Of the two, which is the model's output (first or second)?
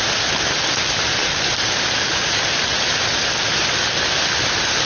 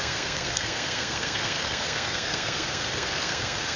second